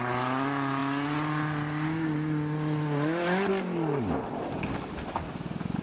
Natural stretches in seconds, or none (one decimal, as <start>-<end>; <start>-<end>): 0.0-5.8